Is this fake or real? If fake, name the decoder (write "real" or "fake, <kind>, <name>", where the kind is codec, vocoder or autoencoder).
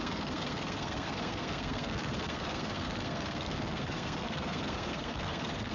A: fake, codec, SNAC